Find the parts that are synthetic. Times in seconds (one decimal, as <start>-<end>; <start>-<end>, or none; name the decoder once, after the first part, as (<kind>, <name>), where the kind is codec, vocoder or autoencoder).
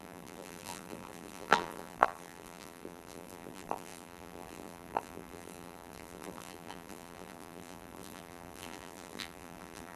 0.0-10.0 (vocoder, BigVGAN v2)